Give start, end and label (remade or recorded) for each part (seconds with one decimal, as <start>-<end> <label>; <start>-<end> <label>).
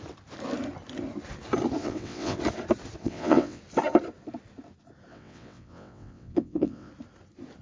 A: 0.0-1.8 recorded; 1.8-2.4 remade; 2.4-3.0 recorded; 3.0-3.6 remade; 3.6-5.1 recorded; 5.1-6.9 remade; 6.9-7.6 recorded